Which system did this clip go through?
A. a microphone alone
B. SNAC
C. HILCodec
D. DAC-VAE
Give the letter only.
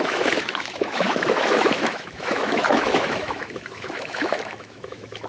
D